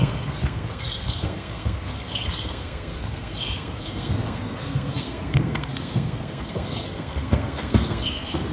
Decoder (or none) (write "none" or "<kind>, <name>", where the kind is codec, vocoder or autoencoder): codec, SNAC